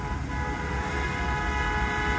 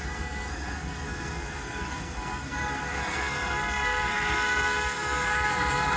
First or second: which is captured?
first